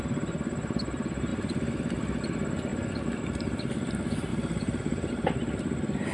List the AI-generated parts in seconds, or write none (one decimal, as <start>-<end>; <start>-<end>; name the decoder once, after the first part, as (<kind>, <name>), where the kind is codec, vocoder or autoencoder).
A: 1.3-2.2 (vocoder, BigVGAN v2); 4.3-5.1